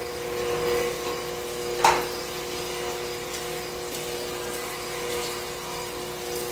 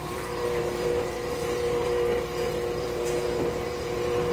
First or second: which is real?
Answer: first